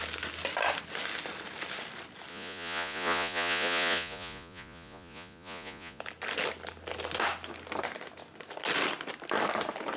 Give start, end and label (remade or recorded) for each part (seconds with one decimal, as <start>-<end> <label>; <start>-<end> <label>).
0.0-2.3 recorded; 2.3-6.0 remade; 6.0-10.0 recorded